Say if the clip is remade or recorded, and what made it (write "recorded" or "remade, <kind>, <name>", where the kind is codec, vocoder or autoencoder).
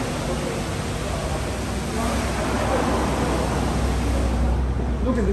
recorded